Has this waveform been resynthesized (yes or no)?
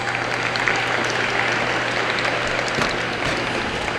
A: no